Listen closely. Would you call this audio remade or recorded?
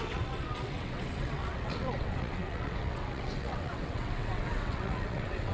remade